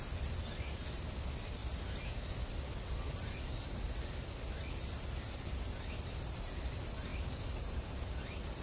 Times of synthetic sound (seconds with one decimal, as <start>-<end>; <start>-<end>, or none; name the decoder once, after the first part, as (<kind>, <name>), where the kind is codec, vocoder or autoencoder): 0.0-8.6 (vocoder, BigVGAN v2)